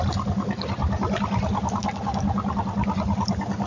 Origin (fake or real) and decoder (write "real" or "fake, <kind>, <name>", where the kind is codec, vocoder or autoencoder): real